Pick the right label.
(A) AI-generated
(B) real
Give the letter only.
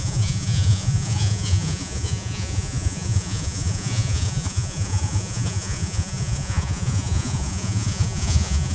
A